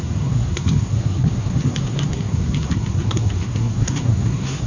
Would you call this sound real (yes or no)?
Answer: no